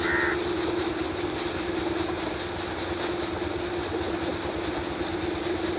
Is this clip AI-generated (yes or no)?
no